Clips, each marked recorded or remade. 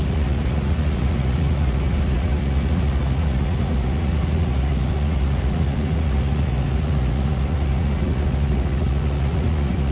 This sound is remade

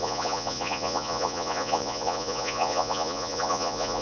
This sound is remade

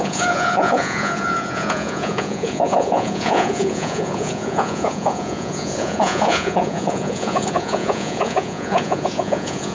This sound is remade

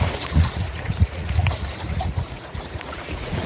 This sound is remade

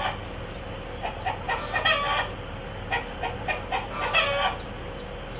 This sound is recorded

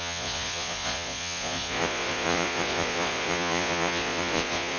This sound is remade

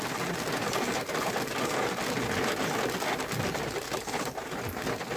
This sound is recorded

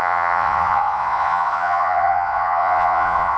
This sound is remade